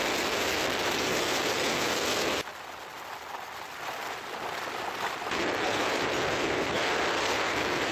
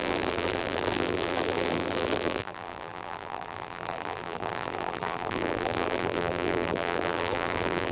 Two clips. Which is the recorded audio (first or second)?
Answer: first